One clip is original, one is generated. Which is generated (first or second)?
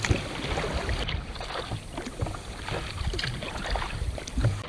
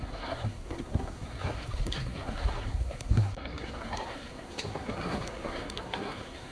second